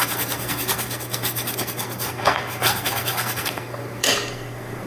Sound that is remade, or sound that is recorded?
remade